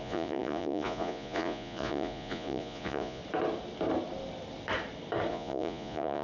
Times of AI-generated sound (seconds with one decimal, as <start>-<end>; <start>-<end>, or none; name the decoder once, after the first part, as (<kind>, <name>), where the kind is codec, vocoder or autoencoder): 0.0-3.2 (vocoder, Vocos); 5.3-6.2